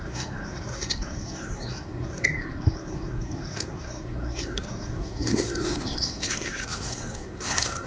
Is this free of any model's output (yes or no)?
no